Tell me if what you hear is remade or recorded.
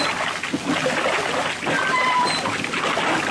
recorded